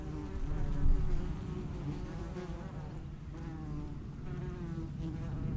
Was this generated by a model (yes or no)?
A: no